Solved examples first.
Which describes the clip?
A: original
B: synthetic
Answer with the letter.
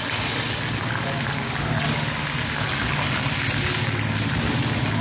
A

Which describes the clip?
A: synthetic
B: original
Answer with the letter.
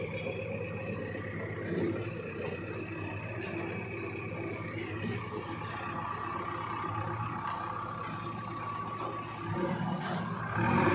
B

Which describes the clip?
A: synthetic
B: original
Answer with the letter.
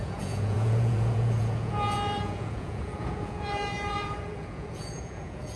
A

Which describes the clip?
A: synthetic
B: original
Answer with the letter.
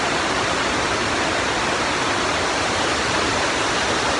B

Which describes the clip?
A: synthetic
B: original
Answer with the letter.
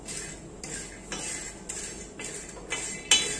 B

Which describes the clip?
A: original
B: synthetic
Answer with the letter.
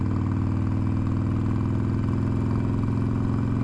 A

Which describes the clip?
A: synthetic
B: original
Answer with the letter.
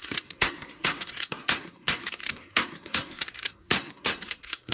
A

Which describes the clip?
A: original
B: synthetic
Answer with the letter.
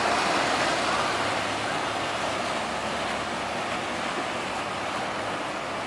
A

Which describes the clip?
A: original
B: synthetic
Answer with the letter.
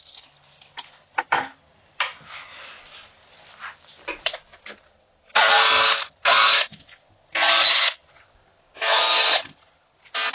A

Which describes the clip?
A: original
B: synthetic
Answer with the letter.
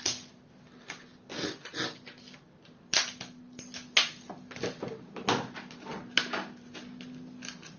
A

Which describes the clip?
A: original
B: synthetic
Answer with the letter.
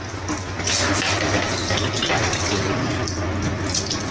A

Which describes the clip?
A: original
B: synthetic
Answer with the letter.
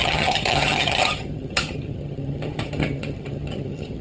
B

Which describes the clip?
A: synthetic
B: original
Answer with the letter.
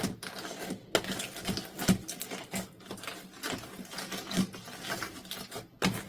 B